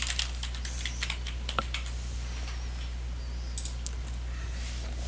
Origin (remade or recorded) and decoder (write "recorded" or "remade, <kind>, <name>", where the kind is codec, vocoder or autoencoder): recorded